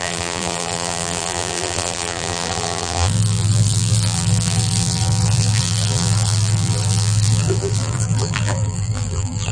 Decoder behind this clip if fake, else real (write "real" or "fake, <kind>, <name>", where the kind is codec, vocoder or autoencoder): fake, vocoder, BigVGAN v2